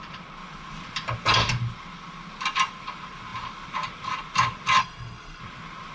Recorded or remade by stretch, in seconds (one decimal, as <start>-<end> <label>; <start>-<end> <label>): 0.0-4.8 recorded; 4.8-5.4 remade; 5.4-5.9 recorded